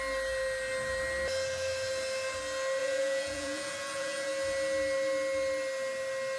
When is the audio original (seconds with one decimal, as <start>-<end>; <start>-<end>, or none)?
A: 0.0-2.8; 4.3-6.4